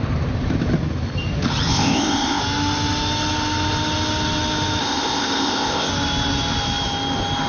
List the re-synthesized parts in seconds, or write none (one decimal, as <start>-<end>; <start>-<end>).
1.7-2.4; 4.8-5.9